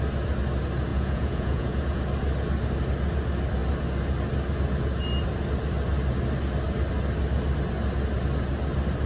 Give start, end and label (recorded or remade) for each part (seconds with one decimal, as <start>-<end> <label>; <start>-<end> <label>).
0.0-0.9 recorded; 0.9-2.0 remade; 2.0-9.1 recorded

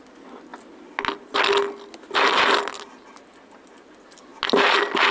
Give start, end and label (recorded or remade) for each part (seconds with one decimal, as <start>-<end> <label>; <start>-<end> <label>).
0.0-5.1 recorded

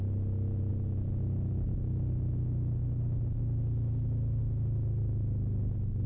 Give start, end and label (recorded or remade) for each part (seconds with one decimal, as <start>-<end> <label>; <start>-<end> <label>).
0.0-6.1 recorded